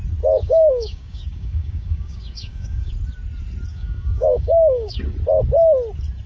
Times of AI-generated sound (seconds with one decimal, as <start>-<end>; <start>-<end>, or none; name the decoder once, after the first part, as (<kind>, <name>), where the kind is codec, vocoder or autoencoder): 0.4-2.9 (codec, DAC); 3.7-5.0